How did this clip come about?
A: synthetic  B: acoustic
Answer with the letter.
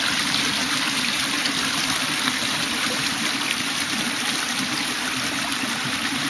A